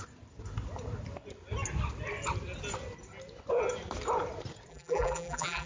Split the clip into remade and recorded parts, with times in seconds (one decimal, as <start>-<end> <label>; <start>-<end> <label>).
0.0-4.7 recorded; 4.7-5.7 remade